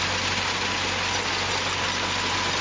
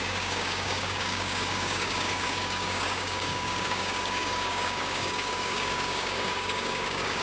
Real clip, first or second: first